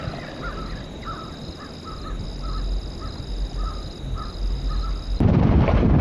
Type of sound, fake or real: real